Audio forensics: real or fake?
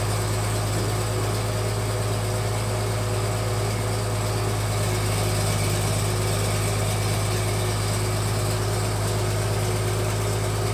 real